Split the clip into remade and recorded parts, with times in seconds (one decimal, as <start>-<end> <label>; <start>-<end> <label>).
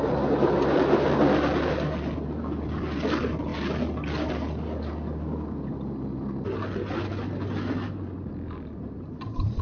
0.0-9.6 recorded